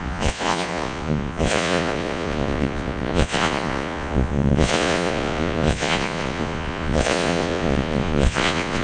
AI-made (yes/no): yes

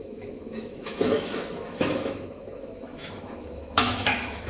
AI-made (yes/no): yes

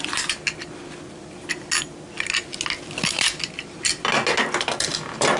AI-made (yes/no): no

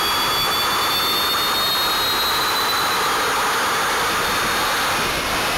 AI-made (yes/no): no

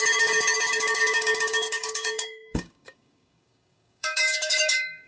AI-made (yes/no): yes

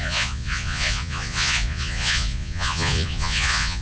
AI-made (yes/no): yes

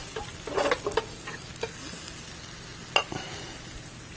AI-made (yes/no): no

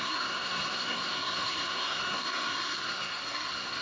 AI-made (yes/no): yes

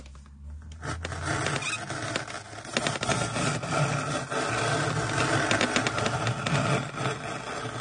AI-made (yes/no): no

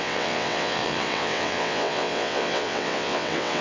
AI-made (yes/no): yes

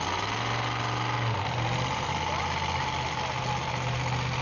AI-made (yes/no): no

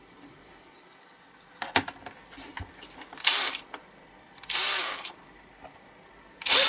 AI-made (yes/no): no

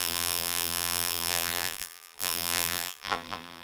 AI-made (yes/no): yes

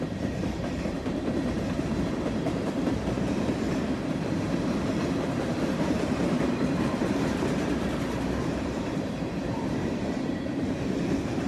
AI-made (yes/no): yes